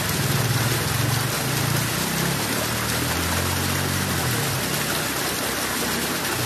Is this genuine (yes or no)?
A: yes